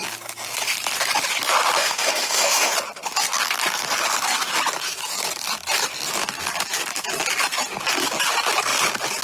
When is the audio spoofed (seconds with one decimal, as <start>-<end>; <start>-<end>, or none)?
1.8-2.7